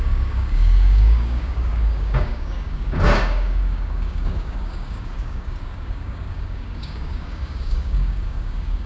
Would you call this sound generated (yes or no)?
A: yes